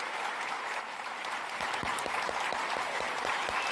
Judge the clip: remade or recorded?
remade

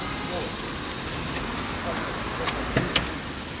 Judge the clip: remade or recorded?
recorded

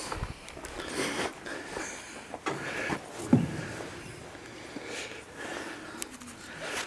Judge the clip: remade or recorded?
recorded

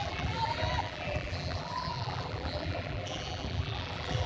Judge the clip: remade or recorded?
remade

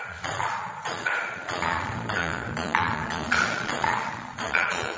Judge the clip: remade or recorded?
remade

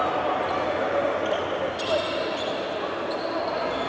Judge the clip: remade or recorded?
recorded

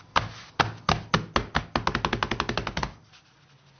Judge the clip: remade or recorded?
recorded